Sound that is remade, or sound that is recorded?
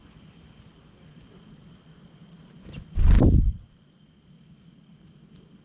recorded